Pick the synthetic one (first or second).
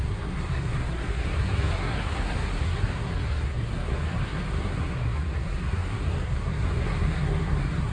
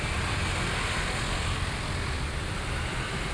first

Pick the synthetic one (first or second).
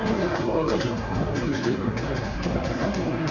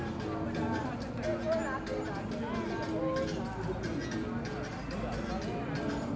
first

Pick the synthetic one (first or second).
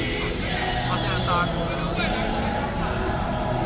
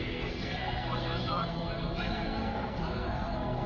second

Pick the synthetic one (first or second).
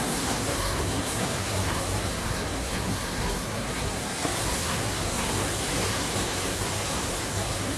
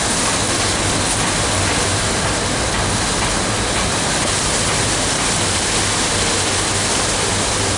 first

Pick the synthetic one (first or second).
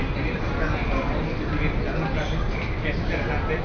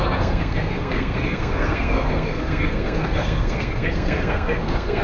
second